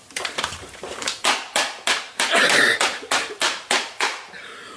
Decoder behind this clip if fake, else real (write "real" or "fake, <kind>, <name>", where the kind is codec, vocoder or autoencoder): fake, vocoder, BigVGAN v2